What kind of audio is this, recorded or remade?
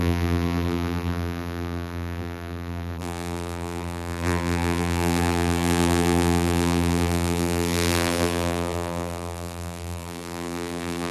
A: remade